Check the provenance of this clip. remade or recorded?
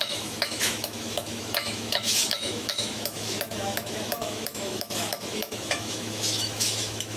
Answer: remade